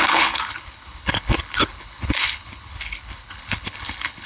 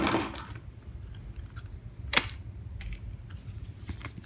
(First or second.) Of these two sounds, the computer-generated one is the first